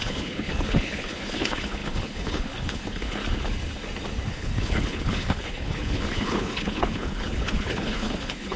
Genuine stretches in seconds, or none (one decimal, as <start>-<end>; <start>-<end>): 3.2-4.3